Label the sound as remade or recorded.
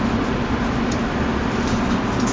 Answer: recorded